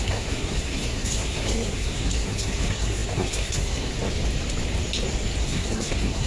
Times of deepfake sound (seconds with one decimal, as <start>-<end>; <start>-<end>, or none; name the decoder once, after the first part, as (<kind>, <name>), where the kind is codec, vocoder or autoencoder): 0.0-3.9 (codec, SNAC); 5.4-6.3